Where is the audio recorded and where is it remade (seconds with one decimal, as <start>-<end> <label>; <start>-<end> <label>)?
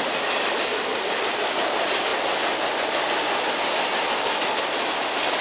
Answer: 0.0-5.4 recorded